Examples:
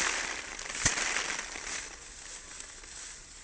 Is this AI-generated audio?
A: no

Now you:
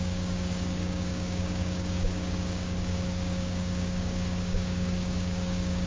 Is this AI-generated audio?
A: yes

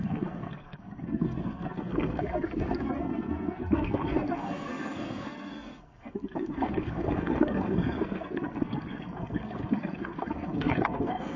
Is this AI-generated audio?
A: yes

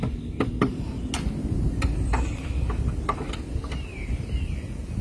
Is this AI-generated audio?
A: no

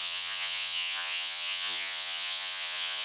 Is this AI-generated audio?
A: yes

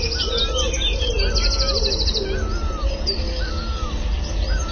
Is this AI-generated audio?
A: no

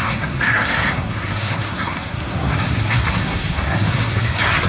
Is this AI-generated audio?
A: yes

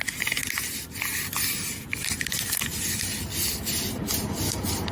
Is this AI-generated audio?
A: no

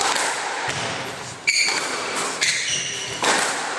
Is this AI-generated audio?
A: yes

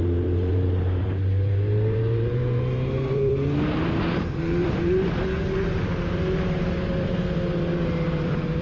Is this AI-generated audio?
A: yes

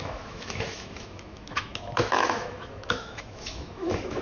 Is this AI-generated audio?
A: yes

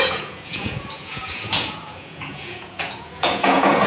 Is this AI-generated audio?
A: yes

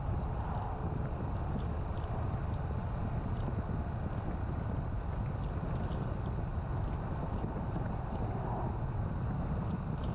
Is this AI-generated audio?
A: no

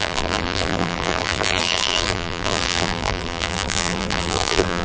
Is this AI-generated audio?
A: yes